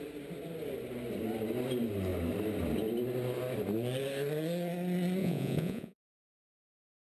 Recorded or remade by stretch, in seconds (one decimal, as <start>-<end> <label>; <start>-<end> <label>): 0.0-5.2 recorded; 5.2-6.0 remade; 6.0-7.0 recorded